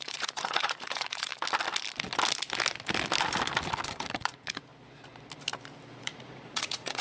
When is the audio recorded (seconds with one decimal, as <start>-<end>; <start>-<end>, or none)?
1.3-3.9; 4.7-6.0

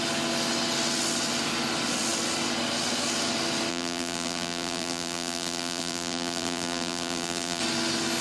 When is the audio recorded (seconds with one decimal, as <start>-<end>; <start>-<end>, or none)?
0.0-3.7; 7.6-8.2

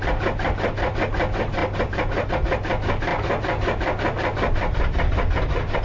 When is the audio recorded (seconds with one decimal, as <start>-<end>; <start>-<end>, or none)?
0.0-5.8

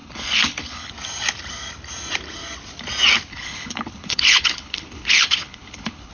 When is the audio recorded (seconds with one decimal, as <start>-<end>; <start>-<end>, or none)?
0.9-3.3

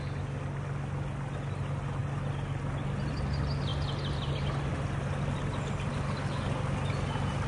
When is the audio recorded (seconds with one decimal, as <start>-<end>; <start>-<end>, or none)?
0.0-7.5